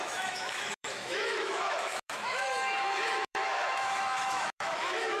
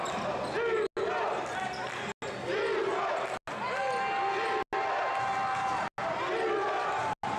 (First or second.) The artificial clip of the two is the first